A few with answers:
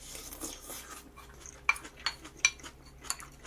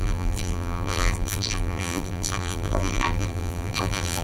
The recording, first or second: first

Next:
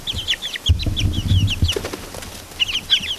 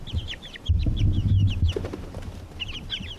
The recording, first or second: first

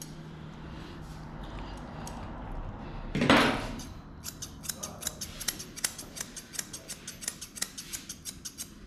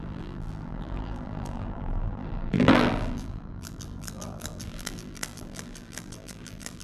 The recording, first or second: first